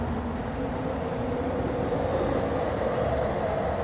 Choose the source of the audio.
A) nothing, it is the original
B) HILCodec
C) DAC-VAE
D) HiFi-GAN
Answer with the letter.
A